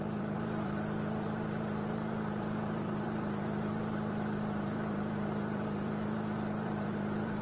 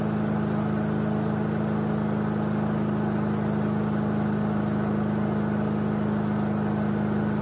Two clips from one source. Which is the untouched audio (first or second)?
second